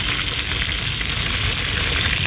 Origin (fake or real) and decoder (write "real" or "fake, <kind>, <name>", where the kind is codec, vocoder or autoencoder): real